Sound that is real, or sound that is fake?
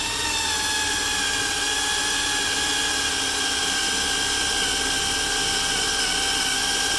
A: real